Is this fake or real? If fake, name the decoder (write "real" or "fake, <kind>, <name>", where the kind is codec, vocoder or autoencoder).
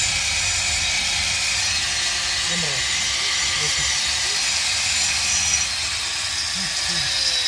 real